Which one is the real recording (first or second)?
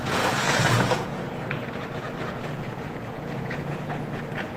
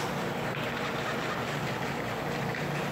second